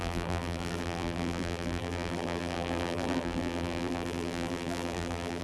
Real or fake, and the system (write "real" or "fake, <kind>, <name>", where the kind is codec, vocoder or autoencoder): fake, vocoder, BigVGAN v2